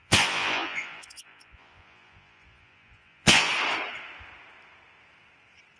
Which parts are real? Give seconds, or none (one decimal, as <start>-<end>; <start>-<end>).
3.5-5.8